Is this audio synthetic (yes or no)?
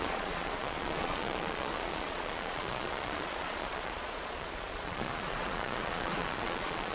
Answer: yes